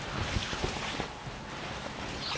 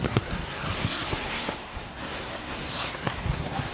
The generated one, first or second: second